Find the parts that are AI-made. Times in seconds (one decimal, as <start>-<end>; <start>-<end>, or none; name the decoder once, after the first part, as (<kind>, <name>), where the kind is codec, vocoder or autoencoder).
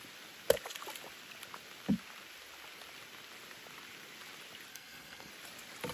4.7-5.3 (codec, SNAC)